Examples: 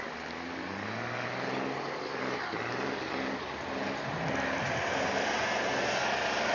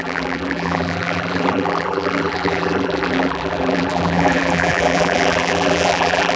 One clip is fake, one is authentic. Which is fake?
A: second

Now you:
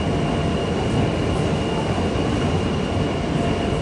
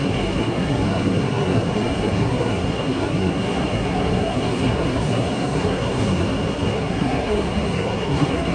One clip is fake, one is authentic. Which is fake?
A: second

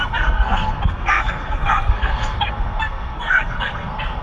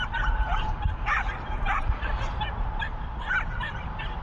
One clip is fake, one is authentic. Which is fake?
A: first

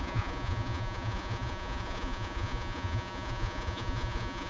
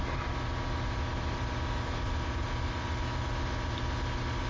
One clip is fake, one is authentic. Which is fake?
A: first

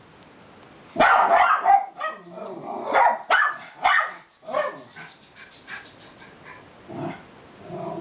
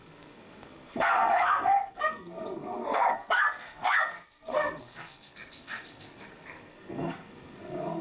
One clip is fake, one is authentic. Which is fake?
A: second